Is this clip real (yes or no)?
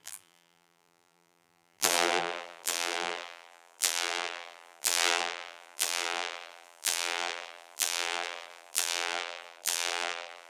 no